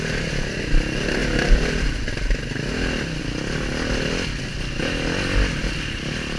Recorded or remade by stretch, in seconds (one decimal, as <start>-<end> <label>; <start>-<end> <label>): 0.0-6.4 recorded